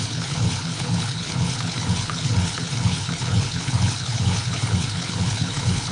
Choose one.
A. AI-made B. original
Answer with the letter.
A